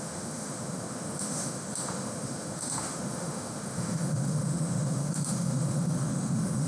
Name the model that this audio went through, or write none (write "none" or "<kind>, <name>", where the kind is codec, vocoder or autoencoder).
autoencoder, DAC-VAE